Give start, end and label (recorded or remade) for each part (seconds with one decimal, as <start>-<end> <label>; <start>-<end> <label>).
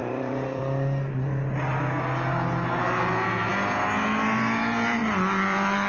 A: 0.0-0.6 remade; 0.6-5.0 recorded; 5.0-5.9 remade